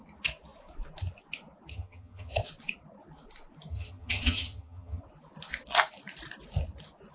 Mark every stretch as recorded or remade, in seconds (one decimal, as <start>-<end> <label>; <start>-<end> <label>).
0.0-1.7 recorded; 1.7-2.4 remade; 2.4-3.7 recorded; 3.7-5.0 remade; 5.0-7.1 recorded